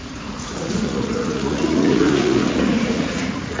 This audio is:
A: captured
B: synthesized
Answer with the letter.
B